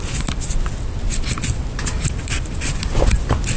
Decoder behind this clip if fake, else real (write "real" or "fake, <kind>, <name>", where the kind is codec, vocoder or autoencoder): real